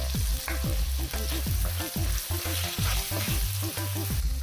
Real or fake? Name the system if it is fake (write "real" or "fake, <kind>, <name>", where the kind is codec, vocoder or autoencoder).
real